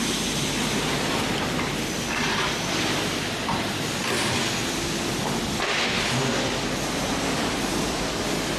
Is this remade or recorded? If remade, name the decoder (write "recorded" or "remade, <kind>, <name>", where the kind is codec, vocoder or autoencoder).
recorded